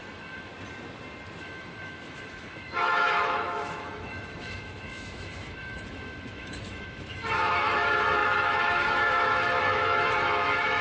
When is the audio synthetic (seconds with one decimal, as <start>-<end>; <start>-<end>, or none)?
0.0-0.5; 1.4-10.8